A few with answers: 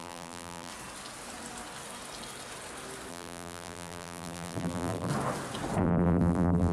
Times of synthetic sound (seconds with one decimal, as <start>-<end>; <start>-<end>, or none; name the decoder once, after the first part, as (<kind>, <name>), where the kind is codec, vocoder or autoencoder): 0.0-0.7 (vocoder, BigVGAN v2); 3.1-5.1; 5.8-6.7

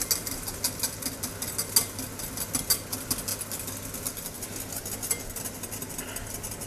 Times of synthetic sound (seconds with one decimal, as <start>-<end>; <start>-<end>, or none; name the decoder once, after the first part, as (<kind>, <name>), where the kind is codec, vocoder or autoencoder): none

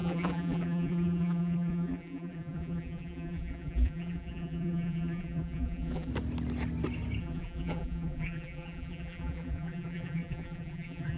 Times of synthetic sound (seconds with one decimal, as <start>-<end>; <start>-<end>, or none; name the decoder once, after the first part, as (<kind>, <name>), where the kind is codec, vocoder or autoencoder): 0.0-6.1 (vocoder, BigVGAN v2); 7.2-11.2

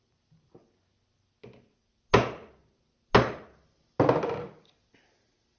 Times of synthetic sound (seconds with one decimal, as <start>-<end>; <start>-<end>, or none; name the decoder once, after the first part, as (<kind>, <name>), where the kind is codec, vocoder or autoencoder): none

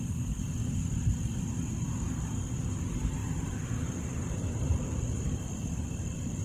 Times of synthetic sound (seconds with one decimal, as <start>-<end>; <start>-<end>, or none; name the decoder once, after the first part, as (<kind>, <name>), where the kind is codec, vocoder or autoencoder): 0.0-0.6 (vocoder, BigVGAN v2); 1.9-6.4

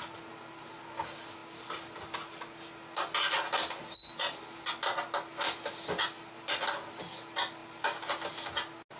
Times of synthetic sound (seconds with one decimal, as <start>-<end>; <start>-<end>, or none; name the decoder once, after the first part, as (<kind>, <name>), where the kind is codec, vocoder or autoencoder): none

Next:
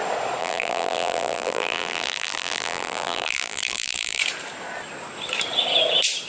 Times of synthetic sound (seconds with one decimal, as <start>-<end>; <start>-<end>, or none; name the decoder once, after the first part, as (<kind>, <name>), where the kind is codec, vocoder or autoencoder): 0.4-4.2 (vocoder, BigVGAN v2)

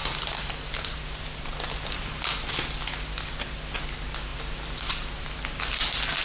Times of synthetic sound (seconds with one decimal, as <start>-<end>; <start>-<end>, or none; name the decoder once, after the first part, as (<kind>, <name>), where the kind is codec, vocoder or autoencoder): none